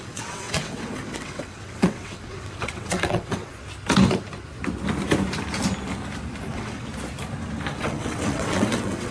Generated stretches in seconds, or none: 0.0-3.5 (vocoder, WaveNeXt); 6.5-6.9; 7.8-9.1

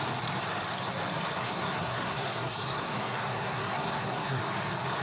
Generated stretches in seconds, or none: 1.4-4.4 (codec, SNAC)

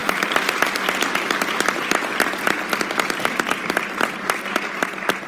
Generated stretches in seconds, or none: none

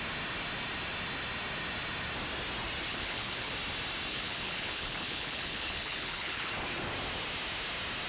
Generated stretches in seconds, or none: 2.9-3.5 (codec, HILCodec); 4.1-6.5